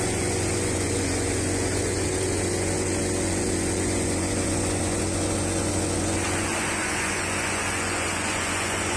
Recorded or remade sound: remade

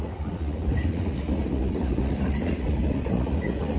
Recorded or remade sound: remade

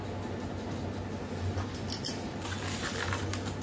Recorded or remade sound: recorded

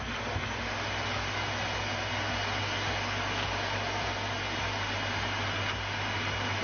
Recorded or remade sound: recorded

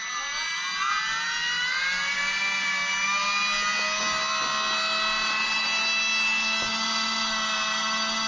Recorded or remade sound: recorded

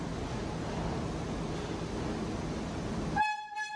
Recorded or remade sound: recorded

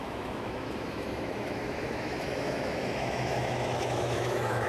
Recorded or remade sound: remade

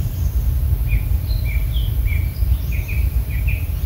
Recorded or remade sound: remade